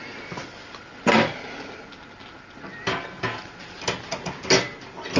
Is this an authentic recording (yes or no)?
yes